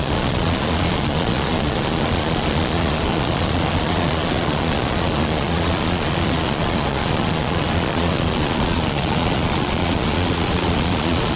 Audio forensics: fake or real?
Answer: fake